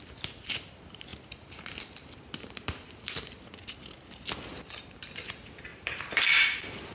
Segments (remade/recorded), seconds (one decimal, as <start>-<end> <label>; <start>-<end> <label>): 0.0-5.7 recorded; 5.7-6.4 remade; 6.4-6.9 recorded